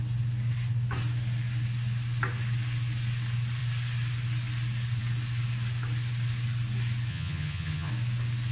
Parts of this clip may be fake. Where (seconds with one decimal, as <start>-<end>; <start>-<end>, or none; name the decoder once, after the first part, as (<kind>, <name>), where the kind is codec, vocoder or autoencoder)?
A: 7.1-7.9 (vocoder, HiFi-GAN)